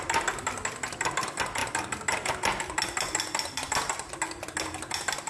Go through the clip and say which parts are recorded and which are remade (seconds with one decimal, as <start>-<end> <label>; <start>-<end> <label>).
0.0-5.3 recorded